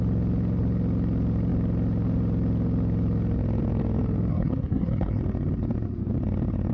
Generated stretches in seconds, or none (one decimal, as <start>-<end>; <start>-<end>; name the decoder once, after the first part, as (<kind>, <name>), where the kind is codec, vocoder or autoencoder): 4.3-5.2 (codec, SNAC)